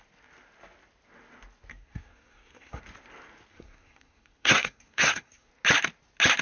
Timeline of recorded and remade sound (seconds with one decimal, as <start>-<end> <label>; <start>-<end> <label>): 0.0-1.7 recorded; 1.7-2.8 remade; 2.8-3.5 recorded; 3.5-5.5 remade; 5.5-6.4 recorded